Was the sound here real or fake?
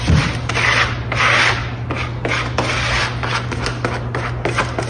real